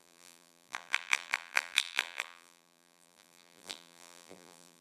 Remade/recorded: remade